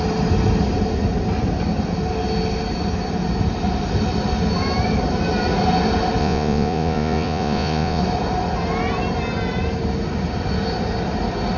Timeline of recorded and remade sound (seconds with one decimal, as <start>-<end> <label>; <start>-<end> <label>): 0.0-6.2 recorded; 6.2-8.0 remade; 8.0-11.6 recorded